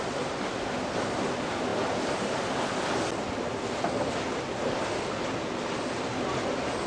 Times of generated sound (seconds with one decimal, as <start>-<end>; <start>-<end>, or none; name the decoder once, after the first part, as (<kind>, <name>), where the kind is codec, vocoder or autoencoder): none